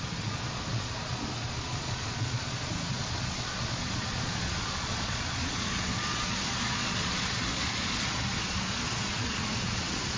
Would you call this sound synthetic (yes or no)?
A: yes